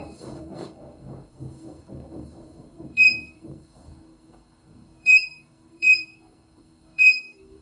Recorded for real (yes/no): no